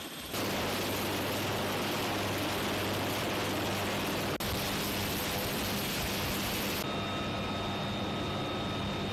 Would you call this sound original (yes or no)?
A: yes